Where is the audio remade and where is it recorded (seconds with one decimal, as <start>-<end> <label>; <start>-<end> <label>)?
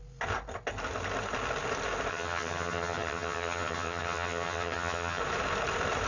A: 0.0-2.1 recorded; 2.1-5.2 remade; 5.2-6.1 recorded